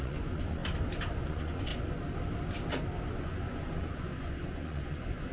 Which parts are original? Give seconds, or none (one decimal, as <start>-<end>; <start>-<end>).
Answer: 0.6-1.2; 1.7-3.1